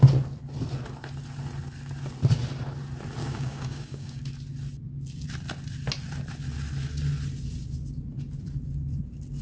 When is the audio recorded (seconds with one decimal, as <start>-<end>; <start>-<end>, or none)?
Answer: 0.0-3.2; 4.2-9.4